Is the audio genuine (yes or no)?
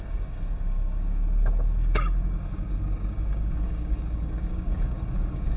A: no